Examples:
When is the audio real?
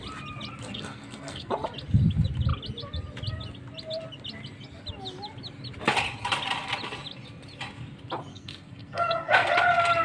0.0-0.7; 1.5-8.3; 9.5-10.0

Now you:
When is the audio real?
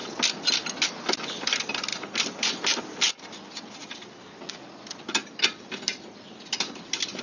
0.0-1.9; 2.6-3.8; 4.5-7.2